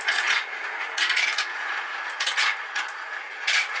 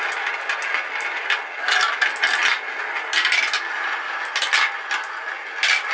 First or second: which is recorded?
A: second